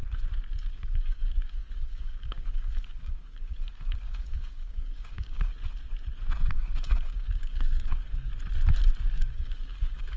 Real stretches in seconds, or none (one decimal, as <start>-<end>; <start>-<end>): 0.0-0.7; 5.5-6.5; 8.3-9.1